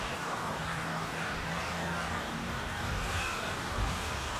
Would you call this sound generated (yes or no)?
yes